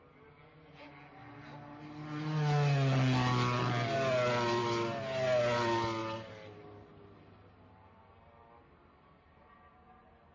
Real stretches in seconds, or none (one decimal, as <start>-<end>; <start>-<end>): 0.0-10.3